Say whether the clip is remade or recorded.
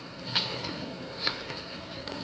remade